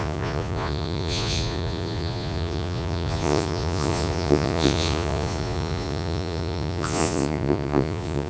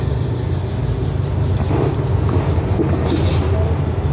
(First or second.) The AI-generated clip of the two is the first